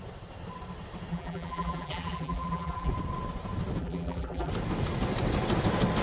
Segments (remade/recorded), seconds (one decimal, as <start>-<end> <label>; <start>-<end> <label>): 0.0-1.1 recorded; 1.1-2.9 remade; 2.9-3.8 recorded; 3.8-4.5 remade; 4.5-6.0 recorded